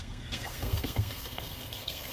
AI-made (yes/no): yes